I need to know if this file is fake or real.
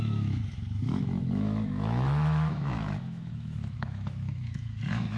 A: fake